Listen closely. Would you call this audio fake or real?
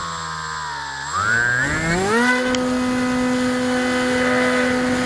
real